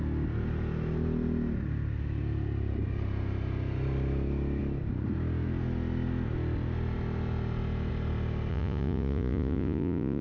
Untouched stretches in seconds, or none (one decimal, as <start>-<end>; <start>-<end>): 0.0-8.5